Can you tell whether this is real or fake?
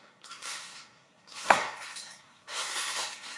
fake